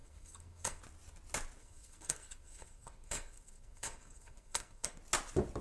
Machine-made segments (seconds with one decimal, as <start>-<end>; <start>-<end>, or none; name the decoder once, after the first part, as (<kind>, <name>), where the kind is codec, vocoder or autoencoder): 0.0-0.8 (codec, SNAC); 1.6-5.0